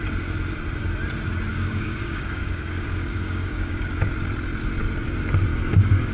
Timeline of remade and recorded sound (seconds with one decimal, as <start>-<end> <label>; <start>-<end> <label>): 0.0-1.5 recorded; 1.5-3.9 remade; 3.9-5.5 recorded; 5.5-6.1 remade